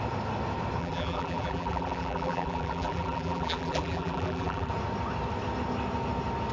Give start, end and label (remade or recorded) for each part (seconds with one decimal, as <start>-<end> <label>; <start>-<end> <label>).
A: 0.0-0.8 recorded; 0.8-4.7 remade; 4.7-6.5 recorded